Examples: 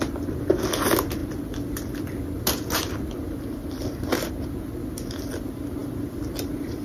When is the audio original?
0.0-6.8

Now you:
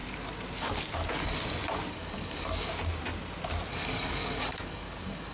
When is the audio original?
0.0-1.9; 2.7-3.7